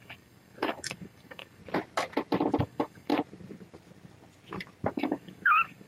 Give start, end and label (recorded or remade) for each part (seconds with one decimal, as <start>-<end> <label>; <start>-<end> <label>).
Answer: 0.0-1.6 remade; 1.6-2.6 recorded; 2.6-3.1 remade; 3.1-4.9 recorded; 4.9-5.9 remade

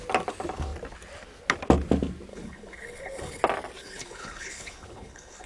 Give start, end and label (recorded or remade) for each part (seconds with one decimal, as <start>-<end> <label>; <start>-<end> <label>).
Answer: 0.0-2.3 recorded; 2.3-3.4 remade; 3.4-3.8 recorded; 3.8-5.5 remade